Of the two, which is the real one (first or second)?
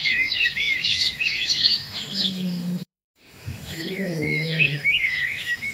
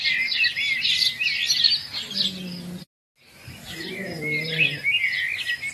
second